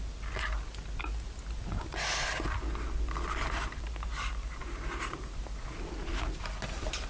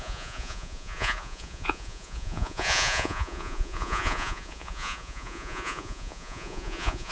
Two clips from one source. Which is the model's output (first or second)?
second